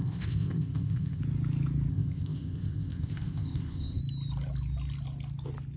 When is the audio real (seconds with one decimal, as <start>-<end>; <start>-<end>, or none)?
1.2-1.9; 4.0-5.8